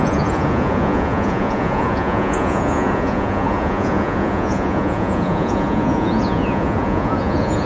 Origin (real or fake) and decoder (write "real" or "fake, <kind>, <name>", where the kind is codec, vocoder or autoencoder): fake, vocoder, Vocos